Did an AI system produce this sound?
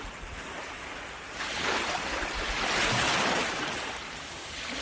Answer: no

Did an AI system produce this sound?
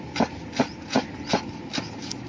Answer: no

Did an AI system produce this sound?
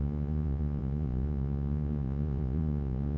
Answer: yes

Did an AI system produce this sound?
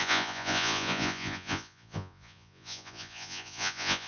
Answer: yes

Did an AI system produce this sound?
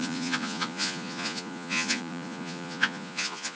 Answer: yes